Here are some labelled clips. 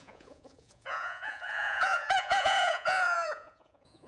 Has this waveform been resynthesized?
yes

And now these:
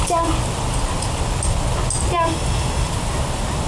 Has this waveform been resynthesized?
no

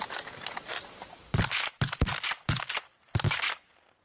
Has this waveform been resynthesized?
no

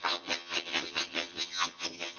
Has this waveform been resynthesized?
yes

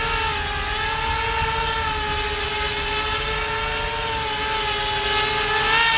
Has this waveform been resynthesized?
no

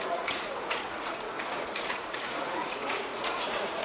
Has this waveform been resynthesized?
yes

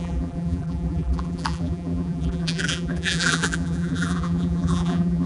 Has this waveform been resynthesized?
yes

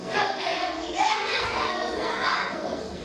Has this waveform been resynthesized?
yes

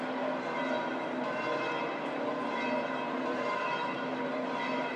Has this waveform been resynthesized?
yes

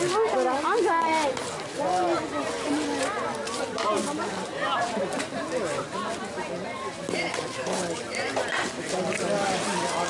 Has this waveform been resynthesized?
no